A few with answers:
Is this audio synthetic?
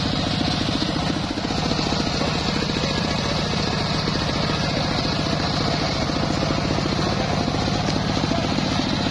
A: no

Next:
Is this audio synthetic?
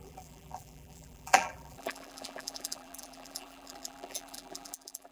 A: yes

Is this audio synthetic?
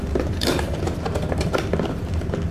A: yes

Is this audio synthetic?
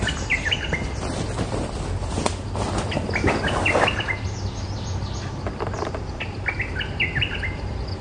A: no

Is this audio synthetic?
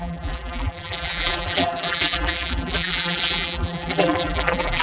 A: yes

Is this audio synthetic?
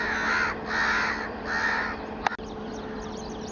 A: no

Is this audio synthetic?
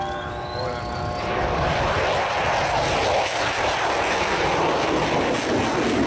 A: no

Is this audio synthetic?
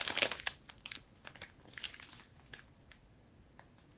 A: no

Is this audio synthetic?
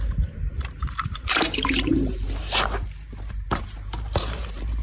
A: yes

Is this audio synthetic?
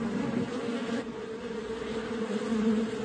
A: no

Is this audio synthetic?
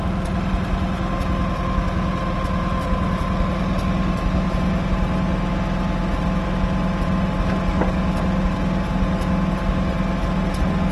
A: no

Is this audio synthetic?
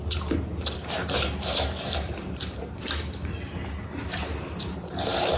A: yes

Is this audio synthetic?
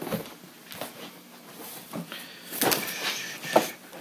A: no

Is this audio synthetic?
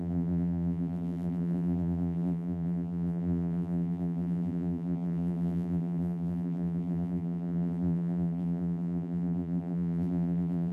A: yes